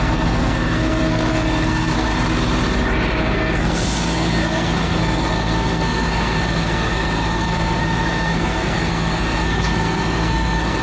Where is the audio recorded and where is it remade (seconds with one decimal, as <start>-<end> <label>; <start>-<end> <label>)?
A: 0.0-2.1 remade; 2.1-3.2 recorded; 3.2-10.8 remade